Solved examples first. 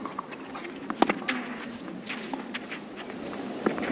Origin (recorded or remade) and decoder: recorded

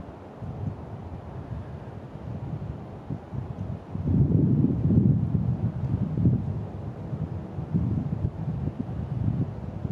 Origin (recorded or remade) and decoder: recorded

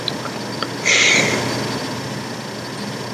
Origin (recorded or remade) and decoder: recorded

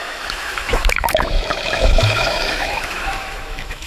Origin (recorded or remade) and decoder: remade, autoencoder, DAC-VAE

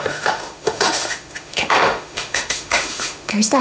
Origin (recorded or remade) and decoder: remade, autoencoder, DAC-VAE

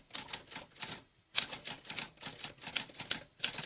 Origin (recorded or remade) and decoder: recorded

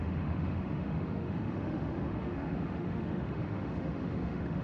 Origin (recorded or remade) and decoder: remade, autoencoder, DAC-VAE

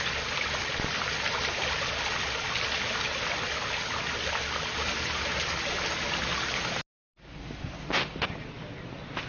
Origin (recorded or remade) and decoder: recorded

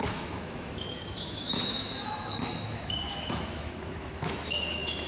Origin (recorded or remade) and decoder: remade, autoencoder, DAC-VAE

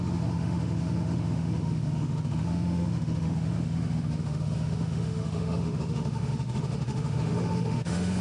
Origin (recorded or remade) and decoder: remade, autoencoder, DAC-VAE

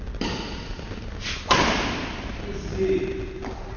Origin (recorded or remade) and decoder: recorded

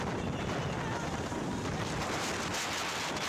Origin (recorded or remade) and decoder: recorded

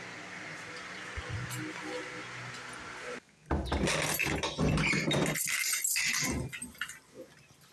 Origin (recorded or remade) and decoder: recorded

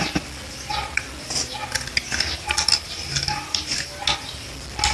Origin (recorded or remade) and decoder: recorded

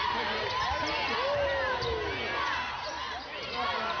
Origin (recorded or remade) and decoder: recorded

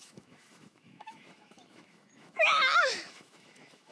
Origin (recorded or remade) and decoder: remade, autoencoder, DAC-VAE